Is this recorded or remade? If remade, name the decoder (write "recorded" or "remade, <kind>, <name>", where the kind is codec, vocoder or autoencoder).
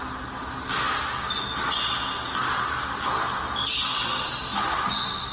recorded